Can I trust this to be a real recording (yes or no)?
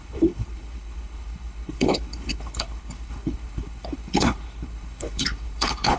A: no